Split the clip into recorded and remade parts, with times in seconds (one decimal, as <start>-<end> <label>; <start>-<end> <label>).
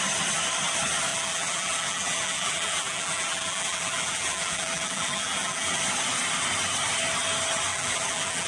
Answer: 0.0-1.1 recorded; 1.1-5.8 remade; 5.8-7.7 recorded; 7.7-8.5 remade